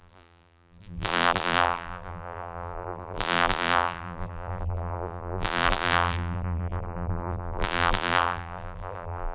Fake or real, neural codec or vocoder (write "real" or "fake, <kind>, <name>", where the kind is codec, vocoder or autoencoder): fake, vocoder, BigVGAN v2